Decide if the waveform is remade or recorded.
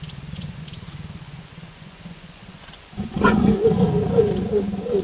remade